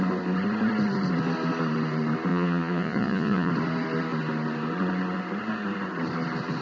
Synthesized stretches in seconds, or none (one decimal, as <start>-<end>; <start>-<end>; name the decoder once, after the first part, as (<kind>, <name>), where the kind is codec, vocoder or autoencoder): 2.3-3.5 (vocoder, Vocos)